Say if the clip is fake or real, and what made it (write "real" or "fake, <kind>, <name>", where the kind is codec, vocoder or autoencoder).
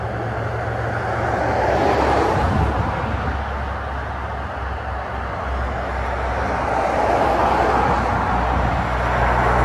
real